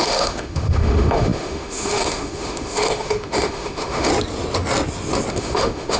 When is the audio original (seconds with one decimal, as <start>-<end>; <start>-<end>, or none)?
4.1-5.3